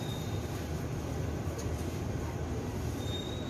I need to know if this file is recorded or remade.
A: recorded